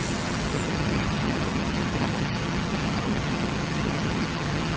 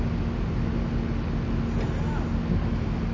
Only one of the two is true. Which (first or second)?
second